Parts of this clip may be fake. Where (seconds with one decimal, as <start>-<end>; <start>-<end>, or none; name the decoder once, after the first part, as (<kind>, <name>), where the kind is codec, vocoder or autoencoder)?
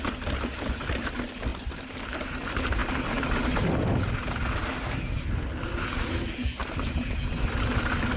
1.5-2.0 (vocoder, BigVGAN v2); 2.8-3.7; 6.6-7.2